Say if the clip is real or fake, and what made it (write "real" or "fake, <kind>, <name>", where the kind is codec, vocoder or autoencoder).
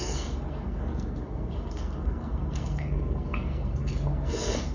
fake, codec, SNAC